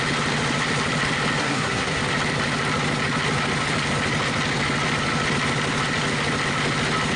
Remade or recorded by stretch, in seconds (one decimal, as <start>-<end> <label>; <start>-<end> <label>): 0.0-1.4 recorded; 1.4-2.0 remade; 2.0-7.2 recorded